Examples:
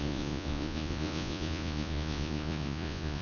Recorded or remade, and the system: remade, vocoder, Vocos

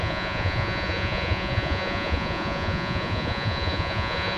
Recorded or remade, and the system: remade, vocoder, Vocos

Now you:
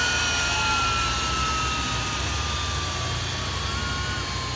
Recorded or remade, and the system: recorded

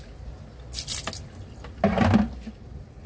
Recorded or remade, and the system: recorded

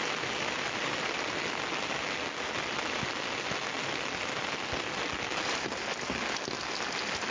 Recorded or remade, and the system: recorded